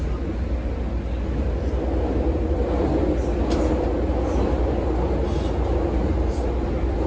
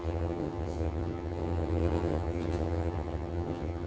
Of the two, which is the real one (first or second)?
first